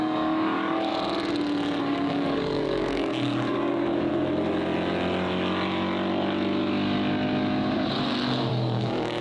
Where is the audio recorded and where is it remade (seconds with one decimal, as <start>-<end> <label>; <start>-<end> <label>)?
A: 0.0-0.9 remade; 0.9-1.8 recorded; 1.8-4.1 remade; 4.1-8.5 recorded; 8.5-9.2 remade